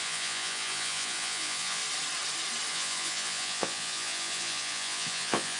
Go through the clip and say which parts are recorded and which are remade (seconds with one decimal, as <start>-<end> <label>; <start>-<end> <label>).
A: 0.0-1.8 remade; 1.8-2.7 recorded; 2.7-5.6 remade